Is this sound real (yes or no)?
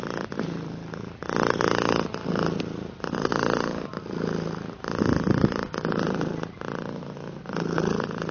yes